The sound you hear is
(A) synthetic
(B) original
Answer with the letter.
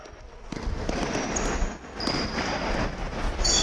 B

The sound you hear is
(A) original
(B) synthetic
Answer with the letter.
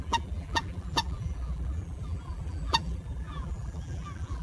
B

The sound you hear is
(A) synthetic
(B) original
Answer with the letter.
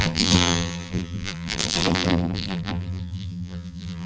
A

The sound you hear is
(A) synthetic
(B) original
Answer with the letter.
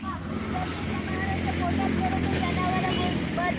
B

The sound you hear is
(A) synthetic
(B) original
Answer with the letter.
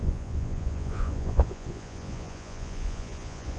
A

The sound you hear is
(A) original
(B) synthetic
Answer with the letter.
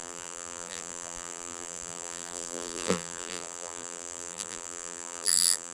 B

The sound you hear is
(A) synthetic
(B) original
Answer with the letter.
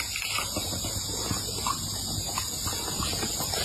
B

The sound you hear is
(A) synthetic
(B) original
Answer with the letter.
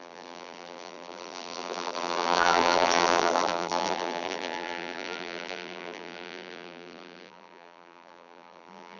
A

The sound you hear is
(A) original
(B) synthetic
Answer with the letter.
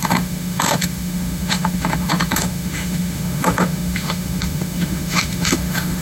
B